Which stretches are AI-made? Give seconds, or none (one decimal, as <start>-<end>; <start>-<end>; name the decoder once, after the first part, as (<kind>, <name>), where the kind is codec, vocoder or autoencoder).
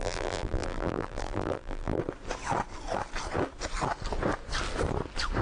0.0-2.0 (vocoder, BigVGAN v2)